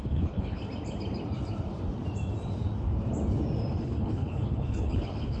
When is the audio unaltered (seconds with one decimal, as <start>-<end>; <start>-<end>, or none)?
0.6-3.8